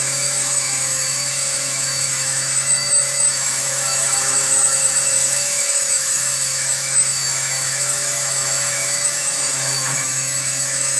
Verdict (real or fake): fake